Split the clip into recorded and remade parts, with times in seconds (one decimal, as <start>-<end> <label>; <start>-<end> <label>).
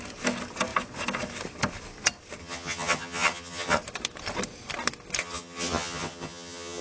0.0-2.4 recorded; 2.4-3.8 remade; 3.8-5.2 recorded; 5.2-6.8 remade